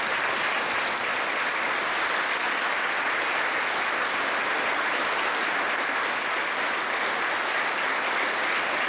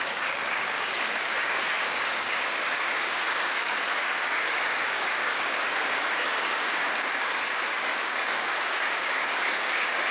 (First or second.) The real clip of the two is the first